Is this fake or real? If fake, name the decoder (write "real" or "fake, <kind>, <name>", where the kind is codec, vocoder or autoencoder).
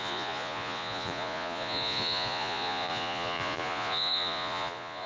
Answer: fake, vocoder, Vocos